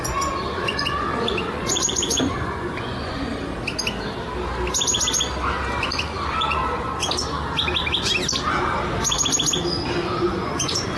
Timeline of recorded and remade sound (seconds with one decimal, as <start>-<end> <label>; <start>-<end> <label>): 0.0-3.3 remade; 3.3-5.8 recorded; 5.8-6.6 remade; 6.6-10.2 recorded; 10.2-11.0 remade